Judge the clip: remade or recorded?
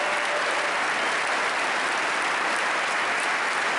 recorded